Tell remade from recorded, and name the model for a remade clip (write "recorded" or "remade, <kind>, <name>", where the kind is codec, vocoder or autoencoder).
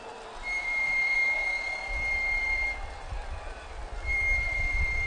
remade, vocoder, BigVGAN v2